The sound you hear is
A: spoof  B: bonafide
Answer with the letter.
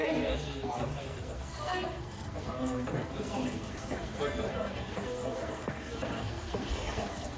A